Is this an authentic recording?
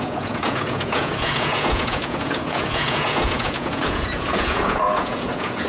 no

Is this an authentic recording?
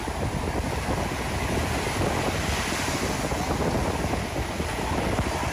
yes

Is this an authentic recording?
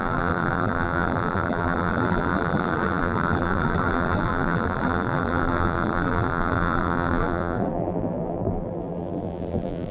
no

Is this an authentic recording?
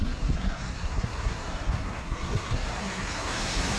no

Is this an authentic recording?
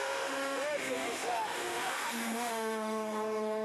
no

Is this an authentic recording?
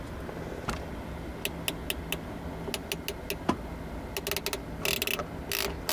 yes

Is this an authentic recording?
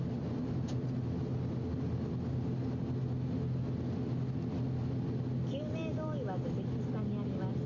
yes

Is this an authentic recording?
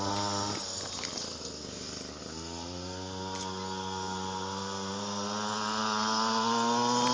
yes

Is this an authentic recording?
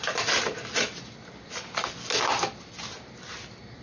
yes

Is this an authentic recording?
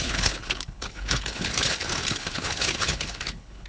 no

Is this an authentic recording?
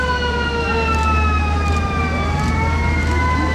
yes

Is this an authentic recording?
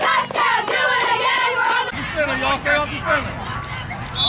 yes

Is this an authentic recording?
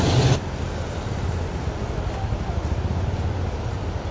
yes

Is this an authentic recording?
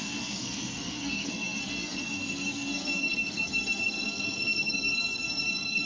no